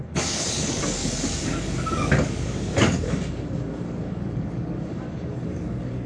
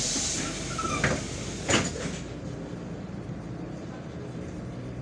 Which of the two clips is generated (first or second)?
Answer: first